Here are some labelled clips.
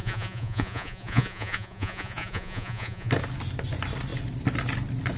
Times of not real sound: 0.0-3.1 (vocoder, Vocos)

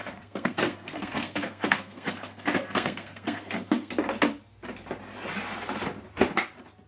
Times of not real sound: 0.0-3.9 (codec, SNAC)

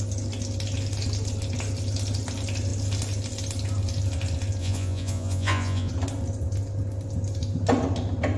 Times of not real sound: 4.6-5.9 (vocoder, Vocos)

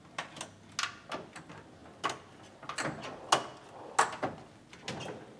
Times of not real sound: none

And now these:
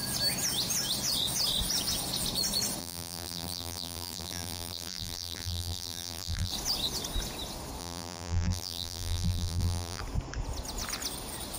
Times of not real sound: 2.8-6.5 (vocoder, BigVGAN v2); 7.8-10.0

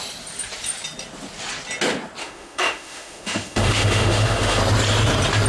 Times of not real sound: 2.2-4.6 (autoencoder, DAC-VAE)